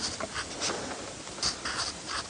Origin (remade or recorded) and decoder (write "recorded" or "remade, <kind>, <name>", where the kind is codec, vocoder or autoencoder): recorded